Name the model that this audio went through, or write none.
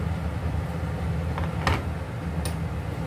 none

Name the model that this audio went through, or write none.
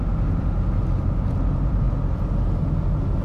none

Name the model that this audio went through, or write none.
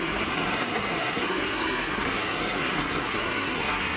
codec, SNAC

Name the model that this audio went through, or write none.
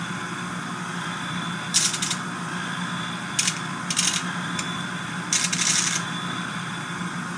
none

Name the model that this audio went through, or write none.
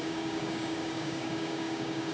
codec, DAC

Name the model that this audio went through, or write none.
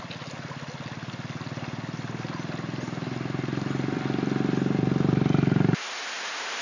none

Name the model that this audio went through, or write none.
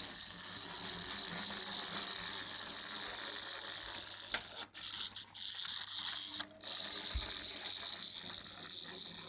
none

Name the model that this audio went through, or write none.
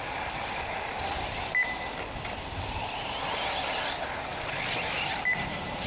none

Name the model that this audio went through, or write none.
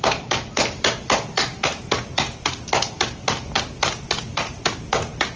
none